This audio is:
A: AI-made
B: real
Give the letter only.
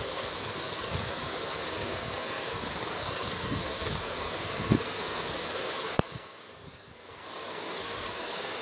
A